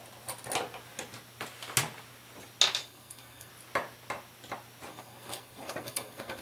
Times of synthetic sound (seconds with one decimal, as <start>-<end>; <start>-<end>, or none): 2.8-3.5; 4.9-6.4